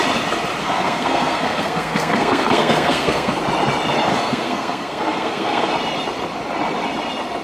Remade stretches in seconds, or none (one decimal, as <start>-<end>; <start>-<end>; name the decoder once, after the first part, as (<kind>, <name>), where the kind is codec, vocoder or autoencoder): 0.6-3.4 (codec, SNAC); 4.1-5.7